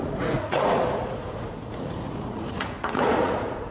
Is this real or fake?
fake